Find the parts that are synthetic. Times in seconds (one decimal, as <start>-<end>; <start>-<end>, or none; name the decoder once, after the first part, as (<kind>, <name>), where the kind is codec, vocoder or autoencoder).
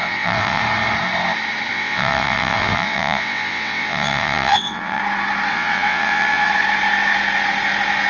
0.0-0.6 (vocoder, WaveNeXt); 1.7-5.0; 5.5-6.5